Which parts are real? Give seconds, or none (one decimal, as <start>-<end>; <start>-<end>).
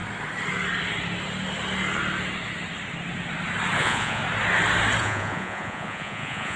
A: 0.0-3.8; 4.2-5.0